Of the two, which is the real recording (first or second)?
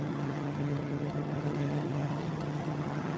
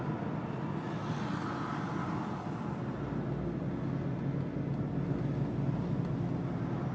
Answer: second